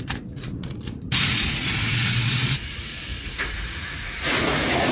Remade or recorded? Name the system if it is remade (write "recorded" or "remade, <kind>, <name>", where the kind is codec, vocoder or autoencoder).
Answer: remade, vocoder, Vocos